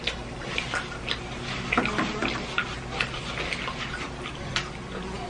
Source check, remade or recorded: recorded